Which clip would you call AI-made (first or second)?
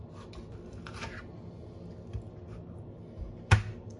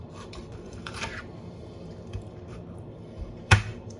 second